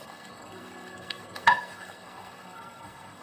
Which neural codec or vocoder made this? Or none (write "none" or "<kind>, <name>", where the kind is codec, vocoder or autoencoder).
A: codec, SNAC